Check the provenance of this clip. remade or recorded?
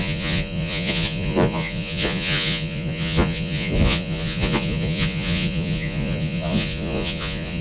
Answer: remade